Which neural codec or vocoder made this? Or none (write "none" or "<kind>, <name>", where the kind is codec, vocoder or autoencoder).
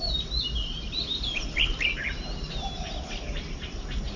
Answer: none